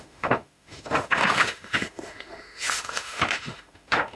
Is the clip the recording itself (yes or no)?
no